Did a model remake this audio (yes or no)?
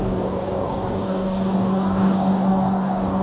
yes